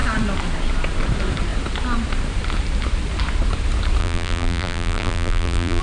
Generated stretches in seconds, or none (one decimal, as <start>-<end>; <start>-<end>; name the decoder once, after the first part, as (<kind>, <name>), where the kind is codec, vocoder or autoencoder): 4.0-5.8 (vocoder, BigVGAN v2)